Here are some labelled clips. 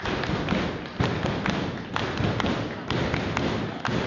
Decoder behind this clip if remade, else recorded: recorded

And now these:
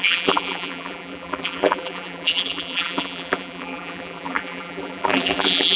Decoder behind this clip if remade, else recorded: remade, vocoder, BigVGAN v2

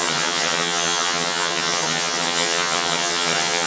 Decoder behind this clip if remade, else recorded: remade, vocoder, HiFi-GAN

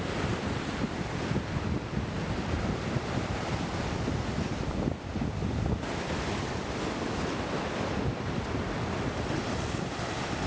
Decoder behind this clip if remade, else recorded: remade, vocoder, BigVGAN v2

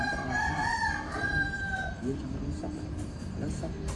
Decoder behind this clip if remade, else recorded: remade, vocoder, BigVGAN v2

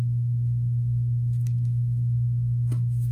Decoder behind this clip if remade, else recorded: remade, autoencoder, DAC-VAE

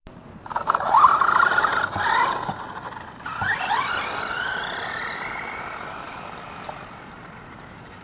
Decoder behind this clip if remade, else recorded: remade, vocoder, BigVGAN v2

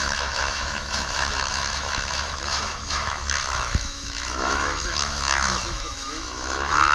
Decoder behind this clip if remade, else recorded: remade, autoencoder, DAC-VAE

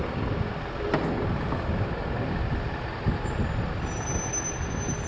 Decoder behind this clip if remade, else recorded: recorded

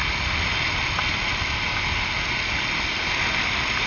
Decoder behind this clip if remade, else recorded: recorded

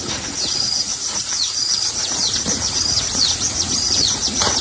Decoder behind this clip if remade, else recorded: remade, vocoder, Vocos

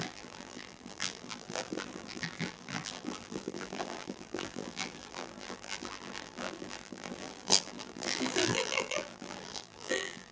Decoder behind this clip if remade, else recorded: remade, vocoder, BigVGAN v2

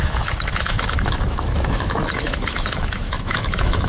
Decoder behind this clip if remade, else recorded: remade, autoencoder, DAC-VAE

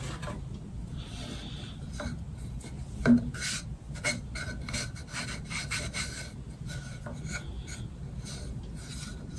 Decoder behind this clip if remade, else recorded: recorded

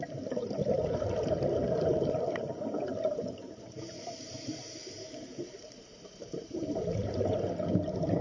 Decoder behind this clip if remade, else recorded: remade, vocoder, BigVGAN v2